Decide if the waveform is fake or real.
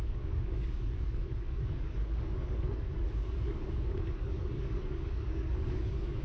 fake